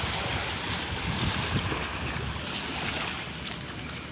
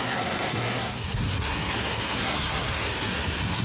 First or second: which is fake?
second